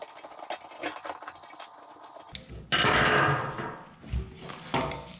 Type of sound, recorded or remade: recorded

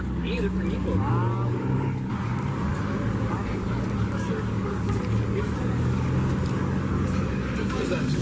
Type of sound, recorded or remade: remade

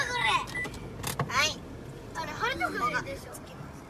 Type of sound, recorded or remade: recorded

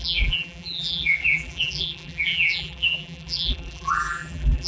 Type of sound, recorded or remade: remade